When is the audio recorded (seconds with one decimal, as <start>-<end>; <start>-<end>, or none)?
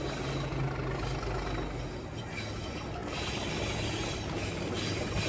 0.0-5.3